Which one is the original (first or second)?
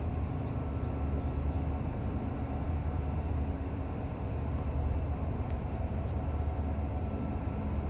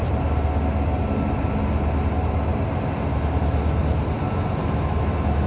second